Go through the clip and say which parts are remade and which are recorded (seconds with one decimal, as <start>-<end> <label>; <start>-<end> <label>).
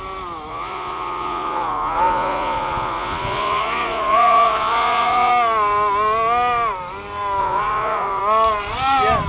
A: 0.0-0.5 recorded; 0.5-5.3 remade; 5.3-7.4 recorded; 7.4-8.2 remade; 8.2-9.3 recorded